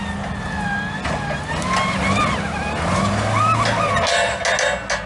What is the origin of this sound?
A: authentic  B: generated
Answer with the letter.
A